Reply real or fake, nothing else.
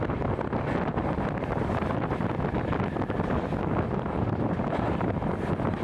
real